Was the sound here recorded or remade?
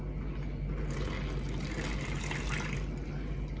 recorded